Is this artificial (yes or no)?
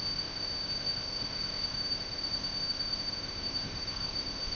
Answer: yes